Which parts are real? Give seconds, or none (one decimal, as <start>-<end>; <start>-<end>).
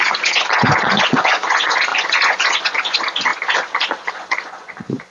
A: none